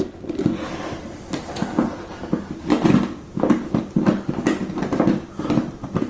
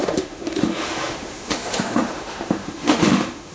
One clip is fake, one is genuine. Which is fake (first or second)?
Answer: second